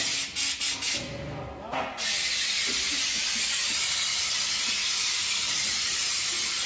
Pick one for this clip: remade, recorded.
recorded